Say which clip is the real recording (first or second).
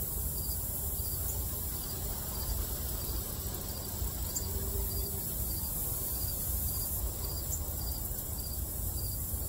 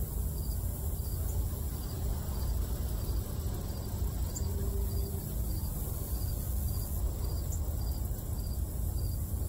second